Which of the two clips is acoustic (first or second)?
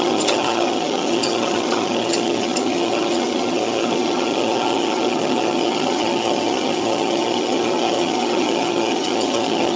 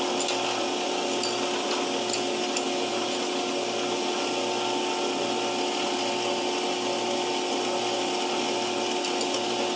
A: second